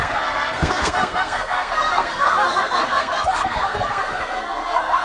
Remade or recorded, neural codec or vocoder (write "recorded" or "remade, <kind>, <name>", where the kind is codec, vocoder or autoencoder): remade, codec, SNAC